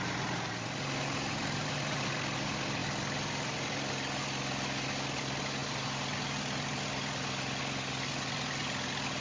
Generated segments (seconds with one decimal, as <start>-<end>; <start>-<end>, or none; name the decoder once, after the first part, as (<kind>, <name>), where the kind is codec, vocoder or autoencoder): none

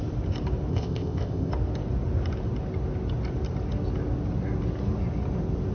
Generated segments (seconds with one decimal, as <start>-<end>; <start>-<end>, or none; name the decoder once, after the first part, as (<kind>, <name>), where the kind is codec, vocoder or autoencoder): 0.7-1.5 (codec, ZipCodec)